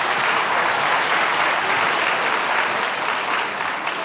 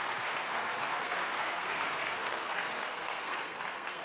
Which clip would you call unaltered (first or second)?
first